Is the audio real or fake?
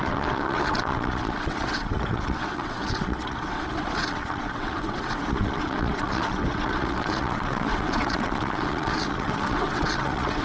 fake